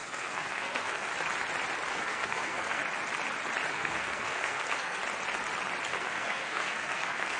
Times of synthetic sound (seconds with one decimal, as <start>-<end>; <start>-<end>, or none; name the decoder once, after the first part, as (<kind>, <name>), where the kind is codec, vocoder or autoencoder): 0.0-1.1 (codec, SNAC); 1.9-2.8; 3.7-5.0; 5.9-7.4